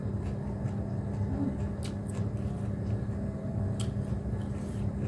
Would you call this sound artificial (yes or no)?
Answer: no